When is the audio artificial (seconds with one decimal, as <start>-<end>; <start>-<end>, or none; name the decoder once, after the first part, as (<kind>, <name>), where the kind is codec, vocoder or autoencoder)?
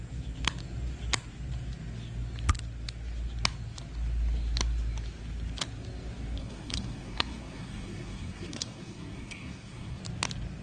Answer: 6.4-10.0 (codec, SNAC)